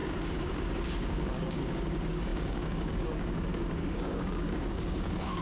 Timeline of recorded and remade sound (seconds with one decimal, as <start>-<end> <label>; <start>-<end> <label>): 0.0-5.4 remade